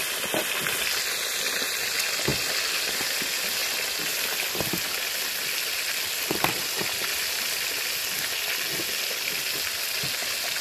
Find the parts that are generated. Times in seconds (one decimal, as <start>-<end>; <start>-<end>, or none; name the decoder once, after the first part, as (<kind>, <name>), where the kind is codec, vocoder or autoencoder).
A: 3.6-4.8 (vocoder, BigVGAN v2)